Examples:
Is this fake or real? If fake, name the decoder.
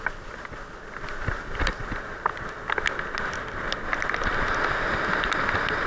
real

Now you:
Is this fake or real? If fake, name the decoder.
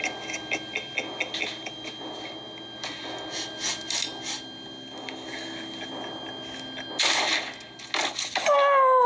real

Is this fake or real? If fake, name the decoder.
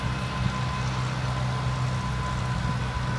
real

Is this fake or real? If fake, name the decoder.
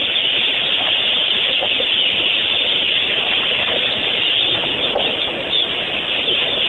real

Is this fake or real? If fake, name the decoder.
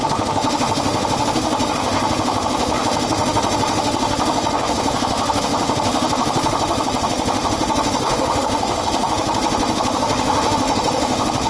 fake, autoencoder, DAC-VAE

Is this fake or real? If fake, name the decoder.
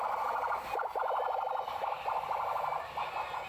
real